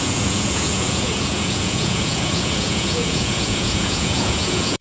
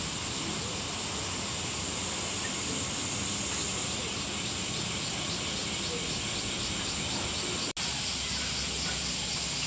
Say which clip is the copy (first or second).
first